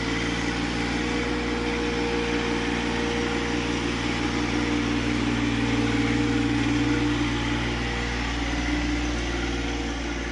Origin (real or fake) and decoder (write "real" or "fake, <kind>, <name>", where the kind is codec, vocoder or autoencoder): real